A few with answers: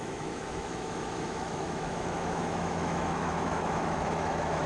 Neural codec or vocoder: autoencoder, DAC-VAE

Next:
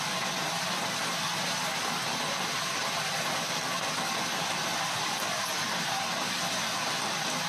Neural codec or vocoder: none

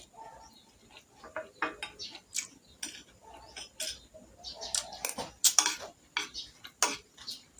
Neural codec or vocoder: none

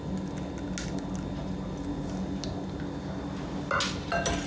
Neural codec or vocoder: none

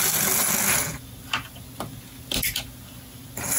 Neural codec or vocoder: none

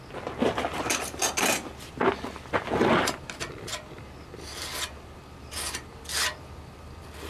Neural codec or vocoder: none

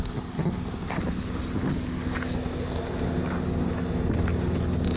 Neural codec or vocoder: none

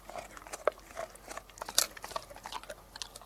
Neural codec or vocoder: none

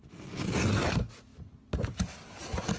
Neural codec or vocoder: none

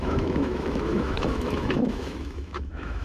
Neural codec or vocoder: autoencoder, DAC-VAE